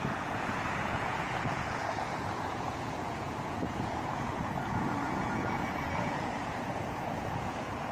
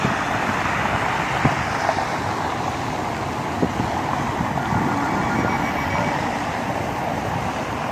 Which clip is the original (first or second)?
second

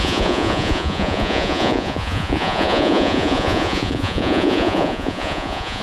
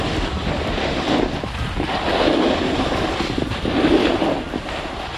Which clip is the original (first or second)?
second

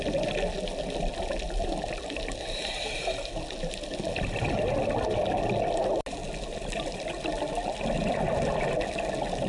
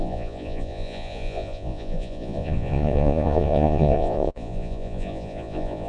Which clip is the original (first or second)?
first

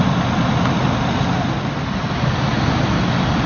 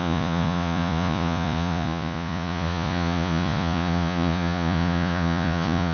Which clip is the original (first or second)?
first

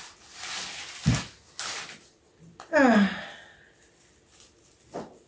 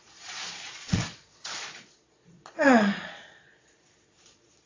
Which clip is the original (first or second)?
first